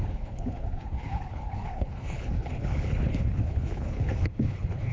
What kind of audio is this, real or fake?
fake